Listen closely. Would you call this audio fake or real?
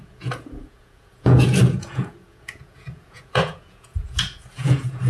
fake